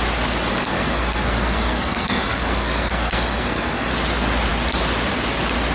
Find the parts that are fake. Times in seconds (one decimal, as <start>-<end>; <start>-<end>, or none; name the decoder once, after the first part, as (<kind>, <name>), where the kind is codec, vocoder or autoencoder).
0.5-3.9 (codec, SNAC)